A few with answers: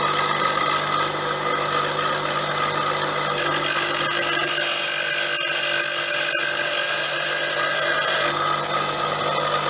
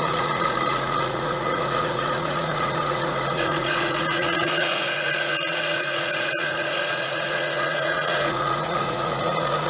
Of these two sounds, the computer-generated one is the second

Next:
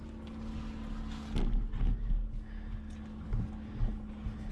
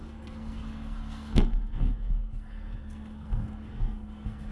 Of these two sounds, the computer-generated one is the second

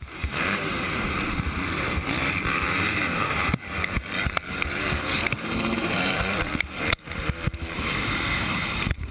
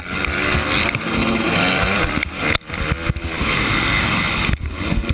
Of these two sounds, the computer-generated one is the first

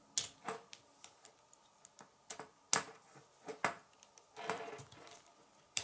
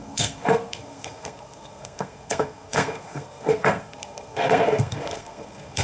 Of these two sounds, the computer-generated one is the second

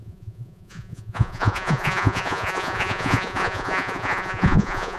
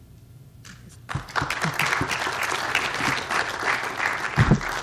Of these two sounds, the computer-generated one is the first